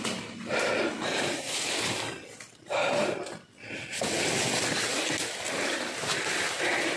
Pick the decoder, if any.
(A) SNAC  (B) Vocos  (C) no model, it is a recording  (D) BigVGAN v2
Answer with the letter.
C